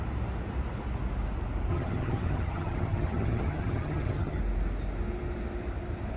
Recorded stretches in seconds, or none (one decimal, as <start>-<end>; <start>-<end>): 0.0-1.7; 4.4-6.2